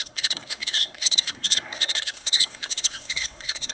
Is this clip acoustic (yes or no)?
no